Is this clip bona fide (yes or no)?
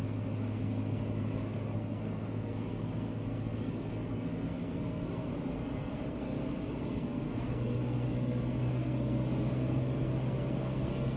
no